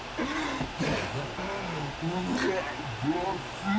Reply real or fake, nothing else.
real